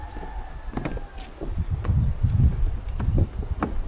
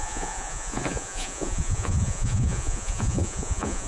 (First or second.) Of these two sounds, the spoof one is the second